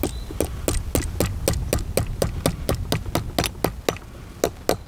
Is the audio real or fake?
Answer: real